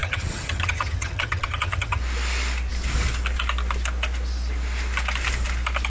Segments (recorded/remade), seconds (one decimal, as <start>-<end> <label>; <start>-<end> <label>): 0.0-2.0 remade; 2.0-5.9 recorded